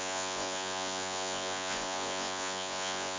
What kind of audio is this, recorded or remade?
remade